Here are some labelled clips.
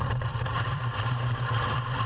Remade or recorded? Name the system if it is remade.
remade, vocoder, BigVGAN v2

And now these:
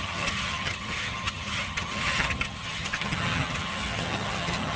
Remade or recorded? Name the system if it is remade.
remade, vocoder, HiFi-GAN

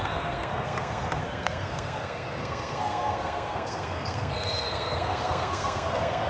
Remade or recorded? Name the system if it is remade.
remade, codec, SNAC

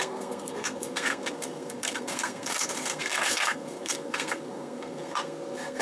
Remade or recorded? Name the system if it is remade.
remade, codec, SNAC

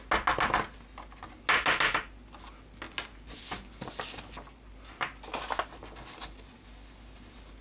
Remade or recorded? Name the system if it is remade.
recorded